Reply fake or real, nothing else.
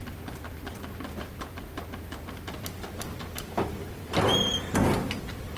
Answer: fake